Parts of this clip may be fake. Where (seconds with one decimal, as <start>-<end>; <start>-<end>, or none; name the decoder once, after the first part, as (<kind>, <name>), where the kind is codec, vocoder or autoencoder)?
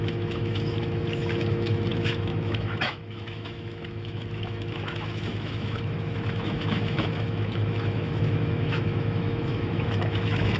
0.0-10.6 (autoencoder, DAC-VAE)